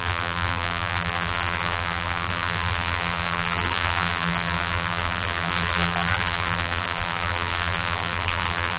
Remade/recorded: remade